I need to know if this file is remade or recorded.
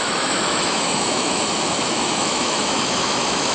remade